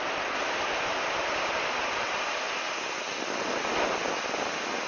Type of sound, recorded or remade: recorded